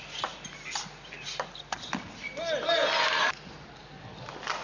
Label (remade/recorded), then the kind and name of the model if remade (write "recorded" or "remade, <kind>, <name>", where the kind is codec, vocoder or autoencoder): recorded